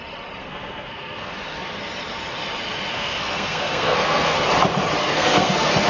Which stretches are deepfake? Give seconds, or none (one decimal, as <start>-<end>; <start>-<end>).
0.4-1.3; 2.9-4.4; 5.0-5.9